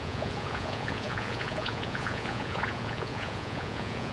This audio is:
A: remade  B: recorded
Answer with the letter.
A